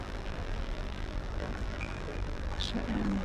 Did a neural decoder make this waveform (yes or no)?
yes